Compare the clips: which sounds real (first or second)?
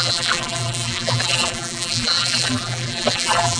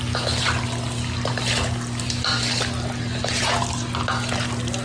second